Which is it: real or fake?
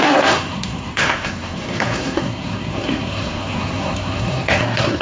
fake